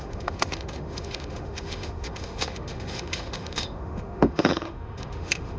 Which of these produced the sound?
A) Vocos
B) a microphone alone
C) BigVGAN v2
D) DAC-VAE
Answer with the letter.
D